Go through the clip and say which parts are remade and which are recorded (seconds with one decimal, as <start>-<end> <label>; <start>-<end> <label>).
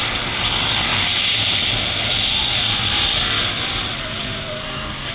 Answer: 0.0-4.6 recorded; 4.6-5.1 remade